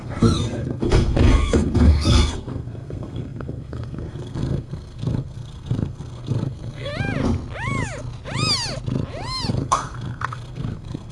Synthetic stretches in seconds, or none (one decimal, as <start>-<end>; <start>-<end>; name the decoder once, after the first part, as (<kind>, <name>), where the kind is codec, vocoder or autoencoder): 0.0-6.9 (codec, SNAC); 9.5-11.1